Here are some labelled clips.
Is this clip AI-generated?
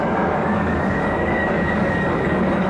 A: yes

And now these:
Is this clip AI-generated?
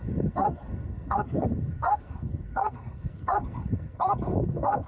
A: yes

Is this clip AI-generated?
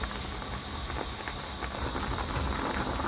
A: no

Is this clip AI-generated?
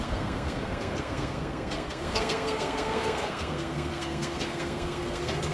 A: yes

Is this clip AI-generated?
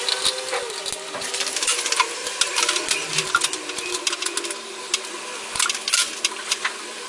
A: no